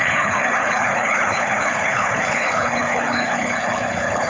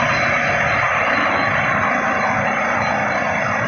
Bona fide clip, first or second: second